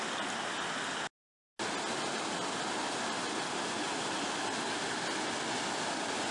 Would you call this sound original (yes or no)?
yes